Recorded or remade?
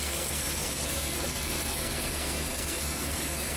remade